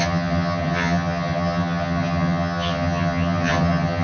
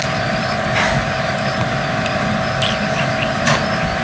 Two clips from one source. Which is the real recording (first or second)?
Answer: second